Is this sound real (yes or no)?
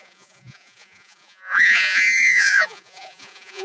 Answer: no